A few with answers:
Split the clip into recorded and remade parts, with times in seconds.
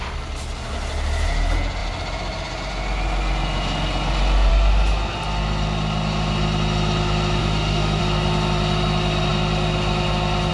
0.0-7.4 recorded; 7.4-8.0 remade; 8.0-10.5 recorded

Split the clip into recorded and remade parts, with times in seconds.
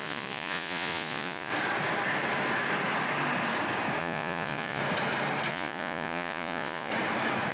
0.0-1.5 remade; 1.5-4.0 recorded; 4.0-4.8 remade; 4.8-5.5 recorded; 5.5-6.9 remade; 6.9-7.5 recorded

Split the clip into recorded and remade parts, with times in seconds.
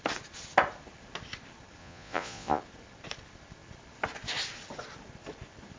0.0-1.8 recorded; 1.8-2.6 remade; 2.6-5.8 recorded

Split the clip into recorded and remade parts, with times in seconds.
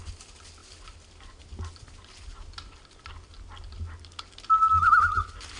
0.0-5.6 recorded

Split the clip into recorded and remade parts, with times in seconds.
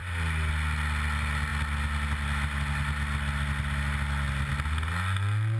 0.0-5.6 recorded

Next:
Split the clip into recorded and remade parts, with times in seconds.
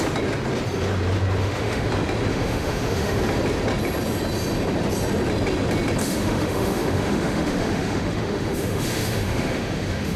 0.0-1.4 recorded; 1.4-1.9 remade; 1.9-2.3 recorded; 2.3-3.2 remade; 3.2-6.0 recorded; 6.0-10.2 remade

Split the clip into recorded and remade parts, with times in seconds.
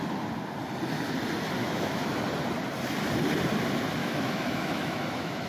0.0-1.6 recorded; 1.6-2.2 remade; 2.2-4.0 recorded; 4.0-5.5 remade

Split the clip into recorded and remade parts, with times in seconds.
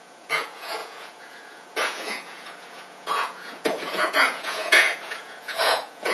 0.0-6.1 remade